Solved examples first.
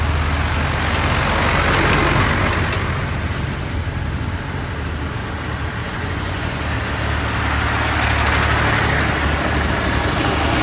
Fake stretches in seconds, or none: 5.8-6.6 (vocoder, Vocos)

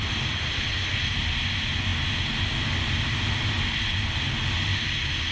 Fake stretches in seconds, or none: none

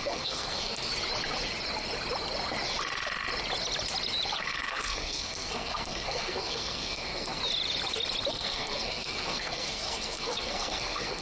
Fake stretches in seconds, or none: 0.0-0.9 (codec, SNAC); 4.4-7.4; 8.3-11.2

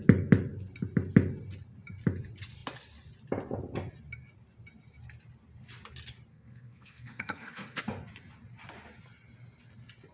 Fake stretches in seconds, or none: 6.3-7.8 (codec, SNAC)

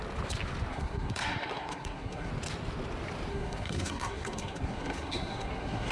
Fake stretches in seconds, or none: 0.7-2.3 (codec, SNAC); 3.3-5.9

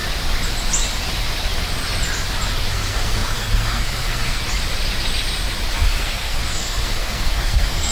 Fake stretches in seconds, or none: 2.7-4.4 (codec, SNAC); 5.7-7.9

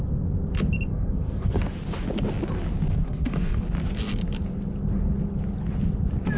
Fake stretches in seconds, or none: 0.9-1.6 (codec, SNAC); 3.0-3.6